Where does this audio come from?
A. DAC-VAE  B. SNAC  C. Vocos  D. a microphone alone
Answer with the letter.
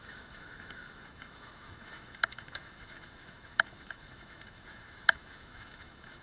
A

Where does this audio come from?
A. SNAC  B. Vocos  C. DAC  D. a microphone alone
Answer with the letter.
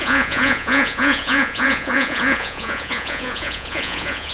B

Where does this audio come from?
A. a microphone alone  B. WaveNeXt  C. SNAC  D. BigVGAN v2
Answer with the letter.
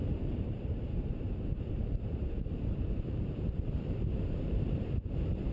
D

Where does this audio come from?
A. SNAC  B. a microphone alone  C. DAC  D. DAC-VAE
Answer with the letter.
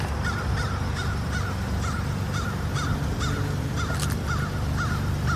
B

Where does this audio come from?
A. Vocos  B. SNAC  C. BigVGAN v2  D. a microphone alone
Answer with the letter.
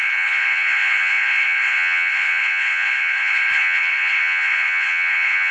A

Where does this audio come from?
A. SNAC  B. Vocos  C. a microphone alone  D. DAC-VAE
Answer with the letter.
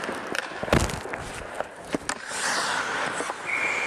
C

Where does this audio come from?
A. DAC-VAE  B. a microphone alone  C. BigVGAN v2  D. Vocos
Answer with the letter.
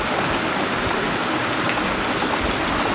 B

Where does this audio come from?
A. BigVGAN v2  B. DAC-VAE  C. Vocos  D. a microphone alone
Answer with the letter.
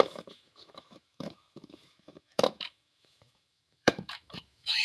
B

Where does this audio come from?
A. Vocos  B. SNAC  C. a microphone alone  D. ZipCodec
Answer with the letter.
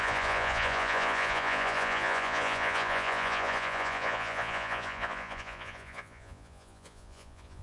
A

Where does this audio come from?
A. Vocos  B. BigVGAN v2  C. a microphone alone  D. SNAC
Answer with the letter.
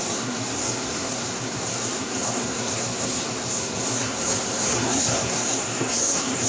D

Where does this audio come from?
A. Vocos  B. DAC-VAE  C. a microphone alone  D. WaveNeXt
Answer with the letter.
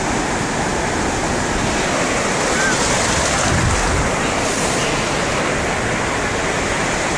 C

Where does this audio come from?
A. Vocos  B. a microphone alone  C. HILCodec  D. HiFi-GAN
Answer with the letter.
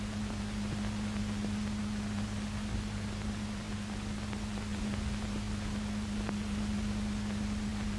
B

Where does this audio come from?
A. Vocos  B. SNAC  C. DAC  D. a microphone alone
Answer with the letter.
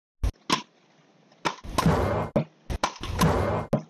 D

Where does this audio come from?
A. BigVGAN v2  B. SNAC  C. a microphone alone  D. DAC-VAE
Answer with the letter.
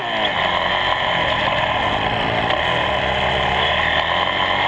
C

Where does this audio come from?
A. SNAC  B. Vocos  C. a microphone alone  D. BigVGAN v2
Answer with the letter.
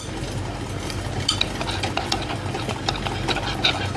C